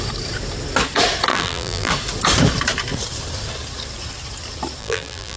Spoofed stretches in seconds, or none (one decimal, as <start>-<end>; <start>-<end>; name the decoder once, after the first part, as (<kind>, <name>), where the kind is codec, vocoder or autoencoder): 1.3-1.9 (vocoder, BigVGAN v2); 4.8-5.4